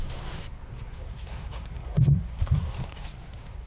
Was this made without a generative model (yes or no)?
no